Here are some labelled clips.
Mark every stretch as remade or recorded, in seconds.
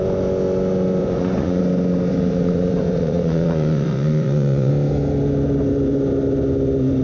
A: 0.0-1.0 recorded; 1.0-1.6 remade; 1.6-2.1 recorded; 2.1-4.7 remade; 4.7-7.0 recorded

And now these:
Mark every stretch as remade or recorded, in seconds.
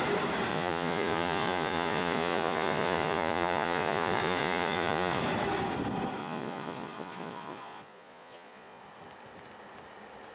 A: 0.0-0.5 recorded; 0.5-5.2 remade; 5.2-6.2 recorded; 6.2-8.8 remade; 8.8-10.3 recorded